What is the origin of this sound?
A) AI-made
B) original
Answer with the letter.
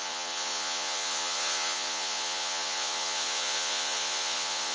A